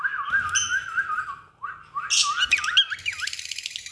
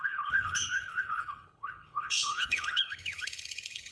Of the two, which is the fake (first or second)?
second